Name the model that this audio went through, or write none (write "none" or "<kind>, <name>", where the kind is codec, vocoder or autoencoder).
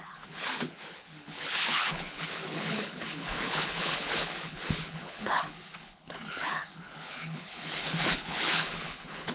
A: codec, HILCodec